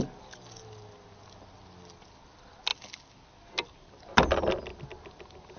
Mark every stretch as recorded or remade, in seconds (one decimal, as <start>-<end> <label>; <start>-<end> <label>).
0.0-5.6 recorded